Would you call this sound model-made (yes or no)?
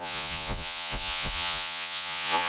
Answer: yes